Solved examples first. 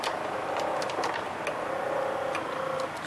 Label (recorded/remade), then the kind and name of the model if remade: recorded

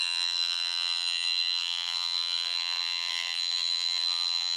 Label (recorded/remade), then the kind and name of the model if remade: remade, vocoder, BigVGAN v2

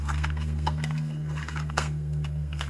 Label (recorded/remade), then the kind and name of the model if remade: remade, codec, SNAC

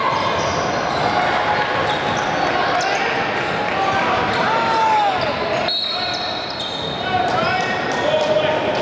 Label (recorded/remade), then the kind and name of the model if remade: recorded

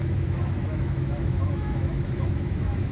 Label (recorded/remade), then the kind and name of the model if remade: remade, autoencoder, DAC-VAE